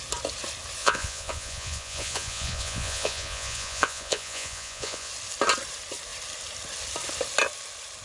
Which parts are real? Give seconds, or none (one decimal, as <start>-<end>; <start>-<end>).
0.0-0.8; 5.1-8.0